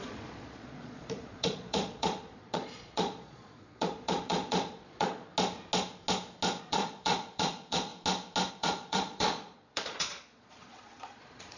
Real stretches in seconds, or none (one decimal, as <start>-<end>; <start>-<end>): 5.3-6.6; 7.9-8.5